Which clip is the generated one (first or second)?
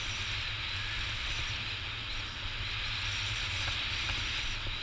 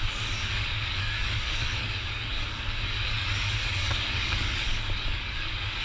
second